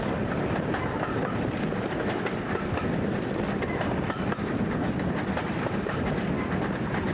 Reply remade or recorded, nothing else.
recorded